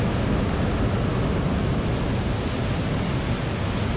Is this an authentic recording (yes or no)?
yes